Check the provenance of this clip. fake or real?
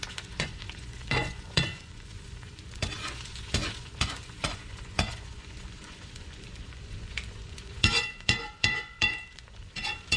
fake